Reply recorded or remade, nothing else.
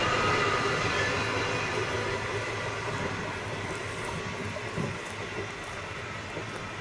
recorded